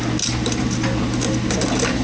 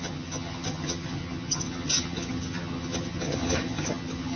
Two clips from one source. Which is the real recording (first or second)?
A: first